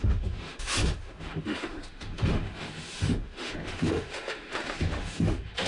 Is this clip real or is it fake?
fake